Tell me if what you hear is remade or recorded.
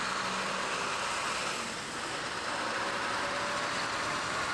recorded